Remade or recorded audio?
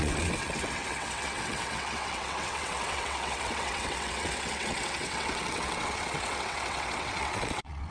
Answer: remade